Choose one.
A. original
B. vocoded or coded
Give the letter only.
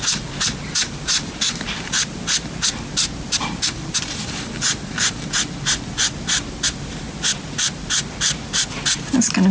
A